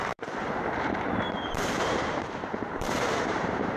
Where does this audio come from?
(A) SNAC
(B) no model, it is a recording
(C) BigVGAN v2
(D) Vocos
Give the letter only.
C